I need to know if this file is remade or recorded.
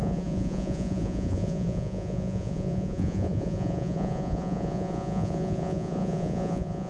remade